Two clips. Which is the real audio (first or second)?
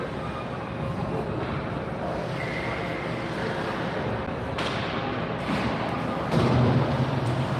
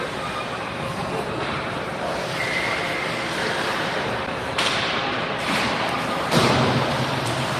first